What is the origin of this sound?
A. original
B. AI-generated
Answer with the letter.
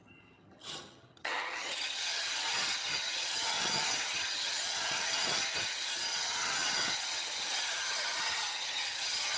B